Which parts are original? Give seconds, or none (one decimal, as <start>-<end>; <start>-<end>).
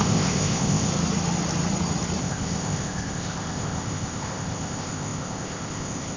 0.9-2.2